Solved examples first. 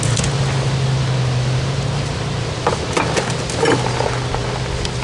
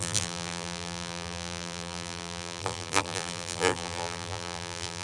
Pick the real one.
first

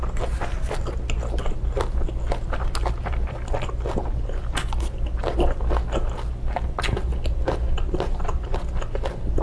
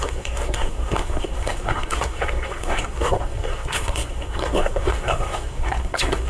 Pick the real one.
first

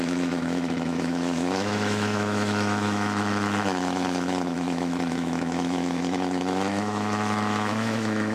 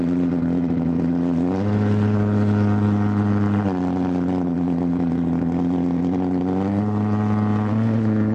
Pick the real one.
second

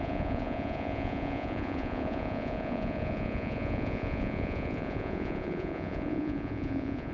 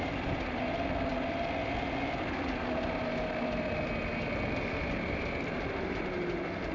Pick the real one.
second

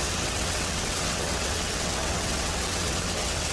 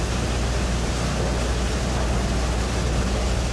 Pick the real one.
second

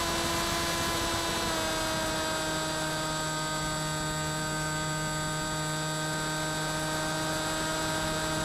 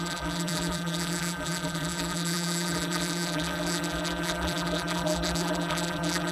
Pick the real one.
first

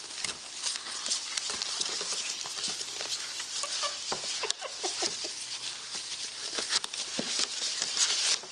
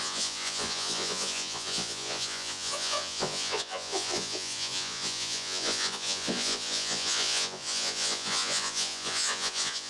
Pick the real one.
first